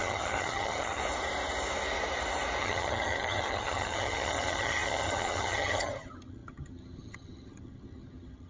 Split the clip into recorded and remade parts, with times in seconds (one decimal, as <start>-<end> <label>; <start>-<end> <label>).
0.0-1.0 remade; 1.0-2.6 recorded; 2.6-8.5 remade